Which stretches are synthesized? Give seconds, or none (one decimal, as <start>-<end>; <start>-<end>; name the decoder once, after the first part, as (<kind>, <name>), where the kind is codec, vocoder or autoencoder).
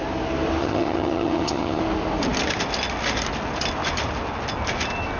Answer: 0.6-1.8 (vocoder, HiFi-GAN)